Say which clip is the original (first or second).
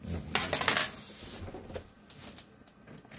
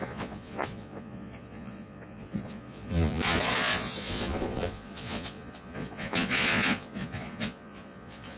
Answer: first